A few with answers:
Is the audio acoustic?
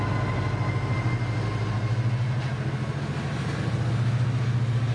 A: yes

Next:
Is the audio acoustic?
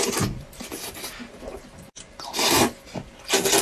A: yes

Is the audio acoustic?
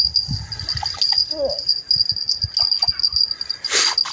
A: yes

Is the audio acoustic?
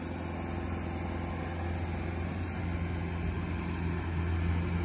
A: yes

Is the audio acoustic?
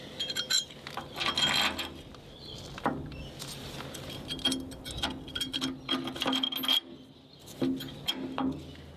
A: yes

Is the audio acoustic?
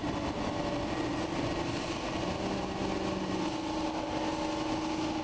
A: yes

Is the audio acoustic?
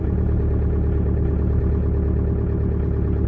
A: no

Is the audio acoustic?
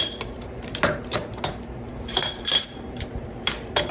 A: no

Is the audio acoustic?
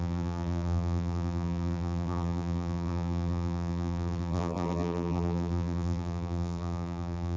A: no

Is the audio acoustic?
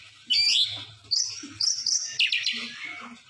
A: yes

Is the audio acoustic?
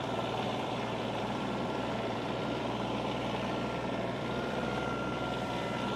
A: no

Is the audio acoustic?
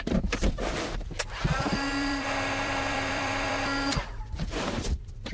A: no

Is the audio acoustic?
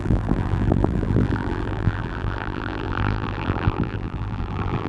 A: no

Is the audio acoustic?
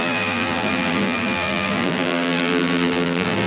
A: no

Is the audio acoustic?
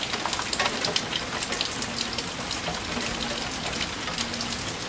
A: yes